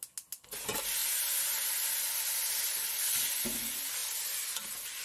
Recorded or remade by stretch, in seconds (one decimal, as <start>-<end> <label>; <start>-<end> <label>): 0.0-5.0 recorded